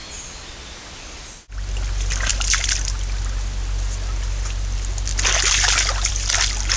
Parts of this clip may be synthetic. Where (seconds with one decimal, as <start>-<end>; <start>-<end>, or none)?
none